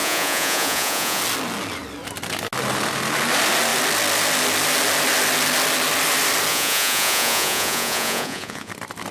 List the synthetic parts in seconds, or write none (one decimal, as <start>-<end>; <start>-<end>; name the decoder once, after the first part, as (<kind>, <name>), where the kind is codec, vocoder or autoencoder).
0.0-1.2 (vocoder, Vocos); 6.5-8.7